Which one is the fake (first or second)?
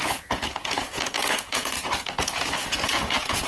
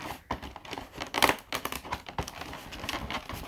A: first